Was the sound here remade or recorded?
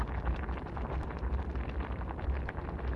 remade